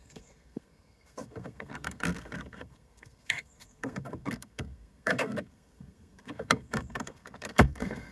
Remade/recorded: remade